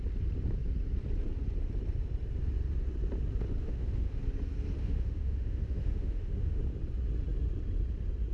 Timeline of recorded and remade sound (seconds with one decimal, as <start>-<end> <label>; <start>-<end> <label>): 0.0-3.6 recorded; 3.6-4.2 remade; 4.2-4.8 recorded; 4.8-6.6 remade; 6.6-8.3 recorded